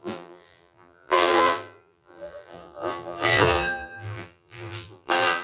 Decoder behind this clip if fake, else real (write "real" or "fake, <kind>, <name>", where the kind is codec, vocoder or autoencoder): fake, vocoder, BigVGAN v2